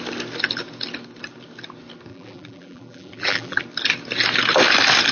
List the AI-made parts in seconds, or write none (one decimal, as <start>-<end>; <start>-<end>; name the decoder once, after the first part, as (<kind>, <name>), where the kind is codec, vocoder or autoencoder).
2.1-3.6 (vocoder, BigVGAN v2)